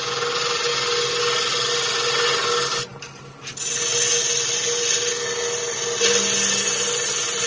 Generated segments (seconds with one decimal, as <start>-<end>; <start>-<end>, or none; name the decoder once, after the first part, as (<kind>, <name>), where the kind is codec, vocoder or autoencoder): none